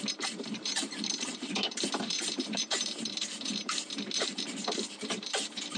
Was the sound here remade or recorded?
remade